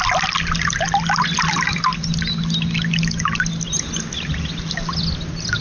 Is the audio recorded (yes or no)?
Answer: yes